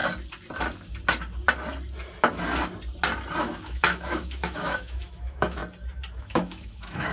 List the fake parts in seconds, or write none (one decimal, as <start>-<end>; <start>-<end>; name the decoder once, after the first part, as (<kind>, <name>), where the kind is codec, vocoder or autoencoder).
3.4-5.6 (autoencoder, DAC-VAE); 6.2-7.1